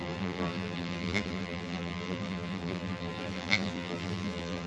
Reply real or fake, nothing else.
fake